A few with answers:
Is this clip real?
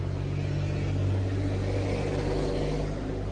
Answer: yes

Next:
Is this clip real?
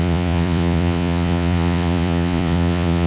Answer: no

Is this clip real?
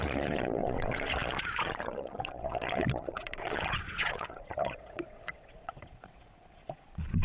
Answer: no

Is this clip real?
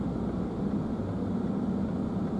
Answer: yes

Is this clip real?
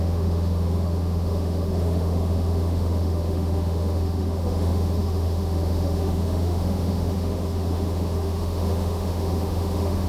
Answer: no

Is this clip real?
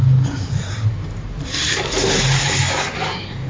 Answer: yes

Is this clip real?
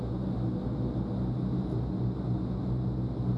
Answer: yes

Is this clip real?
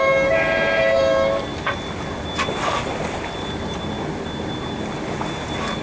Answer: yes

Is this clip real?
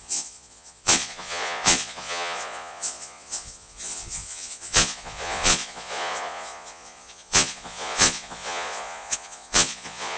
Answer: no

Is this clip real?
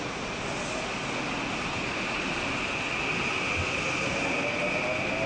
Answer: yes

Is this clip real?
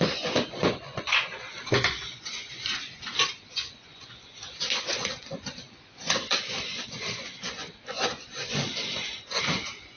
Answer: no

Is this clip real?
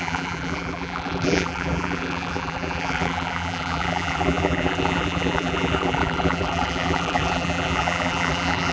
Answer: no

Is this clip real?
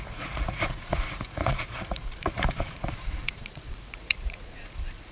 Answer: no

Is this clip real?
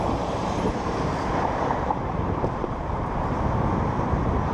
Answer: no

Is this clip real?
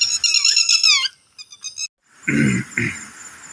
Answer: yes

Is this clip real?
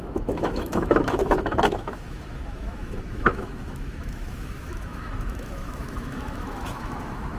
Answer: no